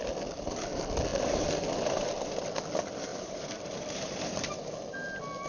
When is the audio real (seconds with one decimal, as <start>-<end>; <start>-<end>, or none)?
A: 0.0-3.1; 4.5-5.5